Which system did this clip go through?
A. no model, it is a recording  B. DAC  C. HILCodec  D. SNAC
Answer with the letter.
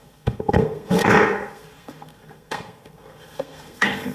D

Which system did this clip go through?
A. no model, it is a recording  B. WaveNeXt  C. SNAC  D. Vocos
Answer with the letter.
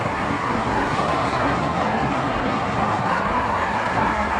C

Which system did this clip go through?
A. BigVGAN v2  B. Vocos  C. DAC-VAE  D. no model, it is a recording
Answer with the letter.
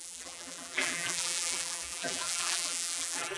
A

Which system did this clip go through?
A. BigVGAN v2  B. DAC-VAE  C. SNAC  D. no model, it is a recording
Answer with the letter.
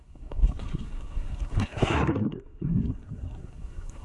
C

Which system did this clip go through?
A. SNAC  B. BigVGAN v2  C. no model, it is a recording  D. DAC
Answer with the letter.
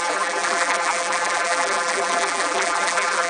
B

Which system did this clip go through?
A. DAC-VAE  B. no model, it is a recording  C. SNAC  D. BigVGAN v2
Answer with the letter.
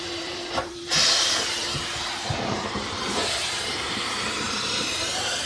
D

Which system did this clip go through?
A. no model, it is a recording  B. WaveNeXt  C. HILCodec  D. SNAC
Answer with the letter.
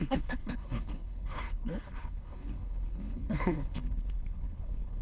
C